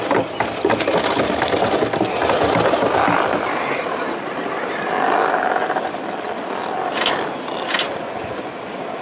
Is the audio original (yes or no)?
yes